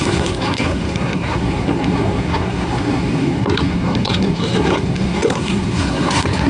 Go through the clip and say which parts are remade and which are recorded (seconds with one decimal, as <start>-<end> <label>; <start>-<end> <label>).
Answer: 0.0-6.5 remade